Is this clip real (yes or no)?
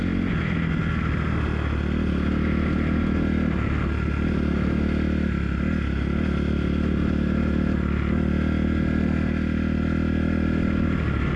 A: yes